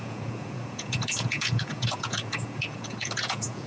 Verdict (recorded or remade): remade